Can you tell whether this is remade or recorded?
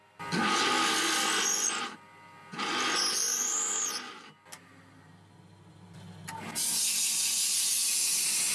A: recorded